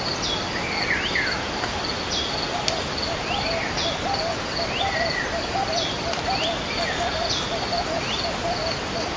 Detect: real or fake real